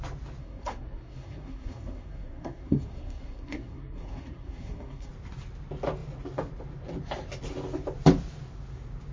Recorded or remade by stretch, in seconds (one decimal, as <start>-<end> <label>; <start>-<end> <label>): 0.0-0.4 recorded; 0.4-5.1 remade; 5.1-9.1 recorded